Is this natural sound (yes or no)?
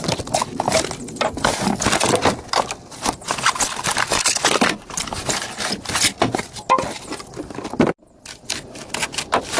yes